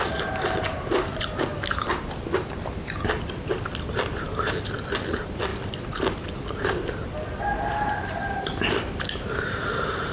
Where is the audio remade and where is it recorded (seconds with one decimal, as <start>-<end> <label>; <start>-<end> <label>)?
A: 0.0-1.5 remade; 1.5-3.0 recorded; 3.0-5.5 remade; 5.5-7.4 recorded; 7.4-10.1 remade